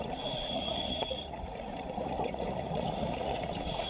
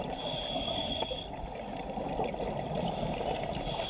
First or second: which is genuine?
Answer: second